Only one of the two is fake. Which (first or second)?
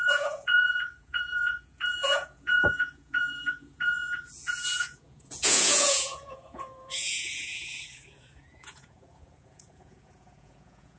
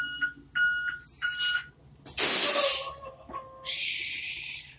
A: first